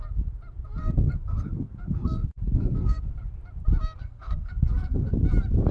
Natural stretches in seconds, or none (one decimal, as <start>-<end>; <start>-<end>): 0.0-0.8; 3.2-4.0; 5.1-5.7